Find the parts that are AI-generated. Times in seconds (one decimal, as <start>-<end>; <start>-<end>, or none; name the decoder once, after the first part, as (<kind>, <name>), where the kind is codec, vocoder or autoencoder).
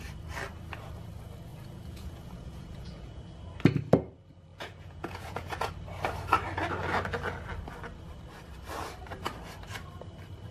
1.5-3.2 (vocoder, Vocos); 4.5-5.7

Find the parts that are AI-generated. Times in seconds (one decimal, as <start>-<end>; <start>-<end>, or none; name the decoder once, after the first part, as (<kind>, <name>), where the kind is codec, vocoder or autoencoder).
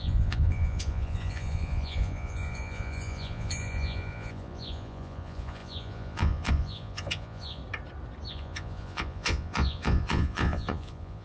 0.0-7.6 (vocoder, Vocos); 8.3-11.2